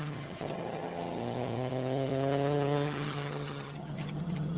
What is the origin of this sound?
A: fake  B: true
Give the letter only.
A